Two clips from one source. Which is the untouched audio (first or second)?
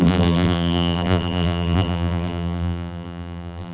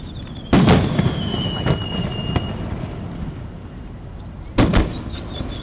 second